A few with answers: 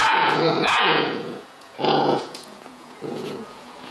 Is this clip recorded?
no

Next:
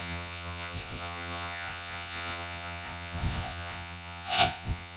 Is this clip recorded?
no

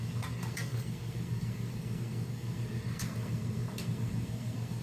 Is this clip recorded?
no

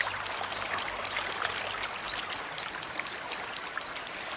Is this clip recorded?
yes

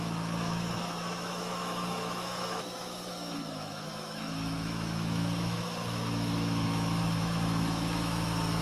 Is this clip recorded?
no